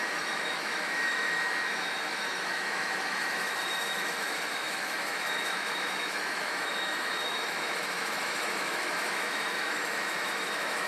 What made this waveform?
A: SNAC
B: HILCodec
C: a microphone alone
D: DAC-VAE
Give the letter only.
D